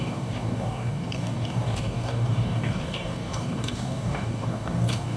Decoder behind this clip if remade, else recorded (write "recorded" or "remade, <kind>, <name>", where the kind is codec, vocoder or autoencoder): remade, codec, DAC